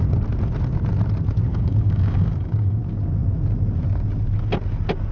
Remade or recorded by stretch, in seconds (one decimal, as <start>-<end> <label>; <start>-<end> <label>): 0.0-1.5 recorded; 1.5-2.8 remade; 2.8-5.1 recorded